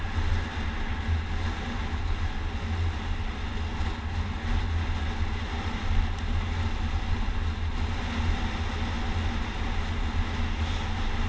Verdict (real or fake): real